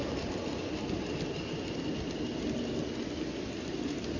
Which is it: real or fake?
real